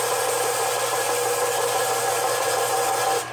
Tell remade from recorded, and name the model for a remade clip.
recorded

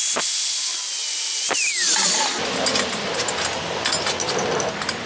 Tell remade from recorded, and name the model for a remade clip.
recorded